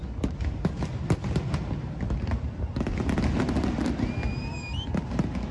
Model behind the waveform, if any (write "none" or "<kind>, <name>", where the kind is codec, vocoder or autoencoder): none